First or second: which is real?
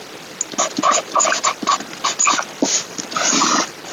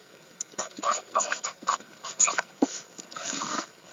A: first